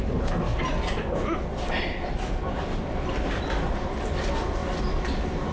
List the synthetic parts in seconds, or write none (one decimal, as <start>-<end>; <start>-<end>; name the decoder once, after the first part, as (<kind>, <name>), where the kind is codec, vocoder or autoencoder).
none